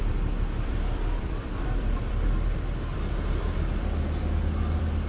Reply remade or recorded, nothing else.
remade